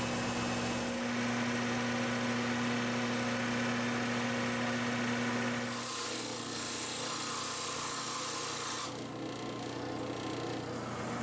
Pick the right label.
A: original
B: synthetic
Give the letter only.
A